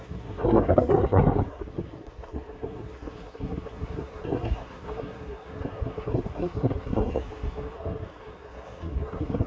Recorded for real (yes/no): no